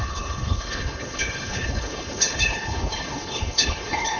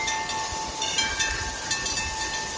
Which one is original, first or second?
second